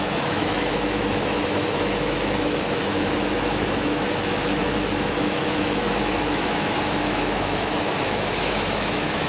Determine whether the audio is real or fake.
fake